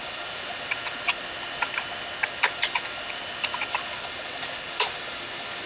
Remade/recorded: recorded